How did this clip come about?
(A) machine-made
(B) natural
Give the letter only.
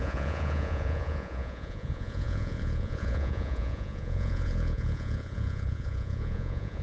A